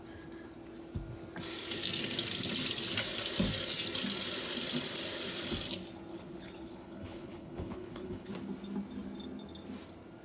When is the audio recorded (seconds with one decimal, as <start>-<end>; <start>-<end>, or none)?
0.0-6.1; 8.3-10.2

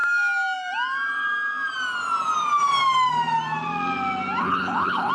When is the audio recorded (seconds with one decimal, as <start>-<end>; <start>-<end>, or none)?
0.0-4.4

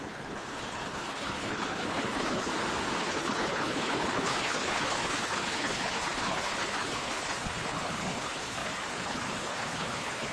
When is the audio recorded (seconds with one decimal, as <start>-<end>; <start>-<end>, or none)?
2.5-3.0